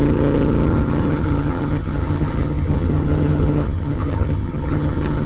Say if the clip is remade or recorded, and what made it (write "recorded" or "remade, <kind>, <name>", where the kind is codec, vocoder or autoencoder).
remade, vocoder, HiFi-GAN